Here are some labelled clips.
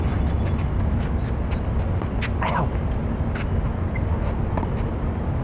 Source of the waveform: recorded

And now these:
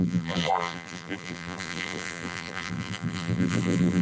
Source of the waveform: remade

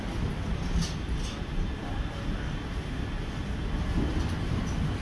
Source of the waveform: recorded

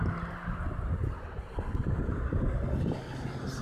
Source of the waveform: recorded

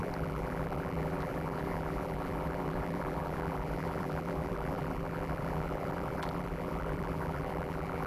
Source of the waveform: remade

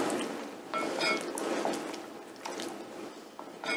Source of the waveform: recorded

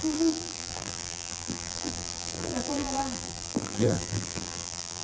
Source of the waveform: remade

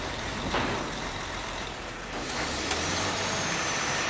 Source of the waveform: remade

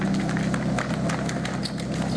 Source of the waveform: recorded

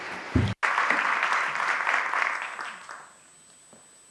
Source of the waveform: recorded